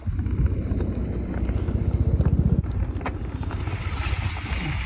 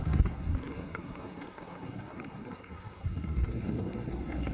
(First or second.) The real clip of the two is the first